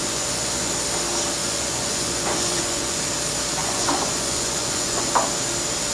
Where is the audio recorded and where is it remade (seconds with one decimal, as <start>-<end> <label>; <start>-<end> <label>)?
0.0-0.7 remade; 0.7-1.4 recorded; 1.4-3.0 remade; 3.0-3.6 recorded; 3.6-5.1 remade; 5.1-5.9 recorded